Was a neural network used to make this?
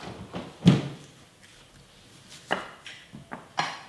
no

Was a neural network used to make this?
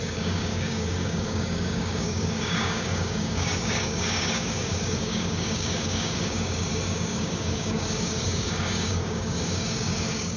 yes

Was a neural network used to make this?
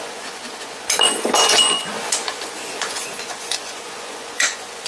yes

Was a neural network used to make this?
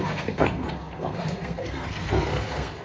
yes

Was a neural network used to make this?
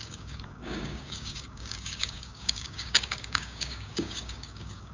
yes